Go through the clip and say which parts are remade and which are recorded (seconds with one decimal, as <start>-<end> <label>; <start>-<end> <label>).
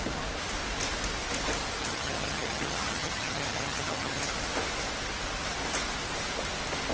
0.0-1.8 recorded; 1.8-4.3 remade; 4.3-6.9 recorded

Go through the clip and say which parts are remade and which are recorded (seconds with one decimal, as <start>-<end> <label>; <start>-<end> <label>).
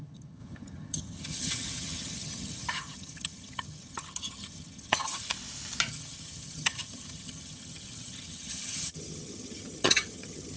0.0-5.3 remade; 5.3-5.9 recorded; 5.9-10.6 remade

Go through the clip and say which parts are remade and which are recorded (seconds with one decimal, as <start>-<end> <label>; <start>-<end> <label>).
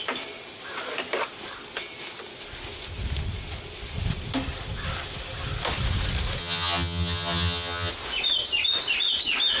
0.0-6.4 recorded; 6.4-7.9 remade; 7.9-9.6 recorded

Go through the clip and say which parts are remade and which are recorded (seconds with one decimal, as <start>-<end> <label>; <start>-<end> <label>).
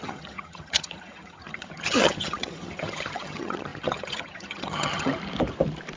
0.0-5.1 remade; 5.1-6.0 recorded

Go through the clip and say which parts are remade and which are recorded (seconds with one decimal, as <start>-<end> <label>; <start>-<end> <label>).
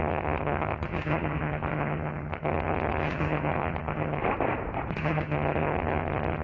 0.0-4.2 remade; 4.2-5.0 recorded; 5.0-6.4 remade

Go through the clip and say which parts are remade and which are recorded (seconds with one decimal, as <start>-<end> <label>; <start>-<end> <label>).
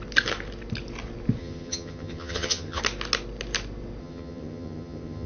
0.0-1.4 recorded; 1.4-2.8 remade; 2.8-4.0 recorded; 4.0-5.3 remade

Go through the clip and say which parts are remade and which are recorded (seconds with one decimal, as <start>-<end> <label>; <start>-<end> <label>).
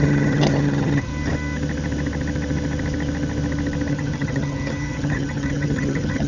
0.0-1.1 remade; 1.1-3.9 recorded; 3.9-6.3 remade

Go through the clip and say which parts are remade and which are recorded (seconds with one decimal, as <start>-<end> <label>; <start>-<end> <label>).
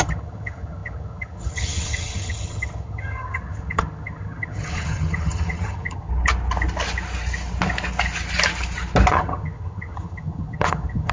0.0-6.1 remade; 6.1-9.1 recorded; 9.1-11.1 remade